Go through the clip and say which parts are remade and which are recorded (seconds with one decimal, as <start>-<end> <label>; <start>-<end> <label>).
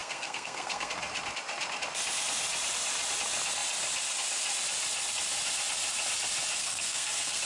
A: 0.0-0.9 remade; 0.9-6.6 recorded; 6.6-7.4 remade